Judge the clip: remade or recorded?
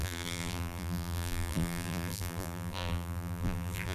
remade